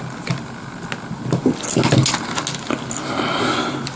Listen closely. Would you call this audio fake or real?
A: real